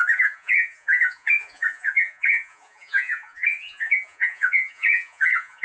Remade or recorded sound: remade